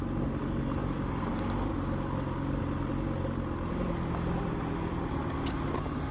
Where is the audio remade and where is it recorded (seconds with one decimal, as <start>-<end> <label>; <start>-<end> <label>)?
0.0-6.1 recorded